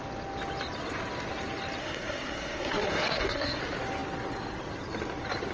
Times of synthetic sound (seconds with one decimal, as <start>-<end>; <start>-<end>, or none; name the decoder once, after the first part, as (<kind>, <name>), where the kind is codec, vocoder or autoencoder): 1.8-3.6 (codec, SNAC)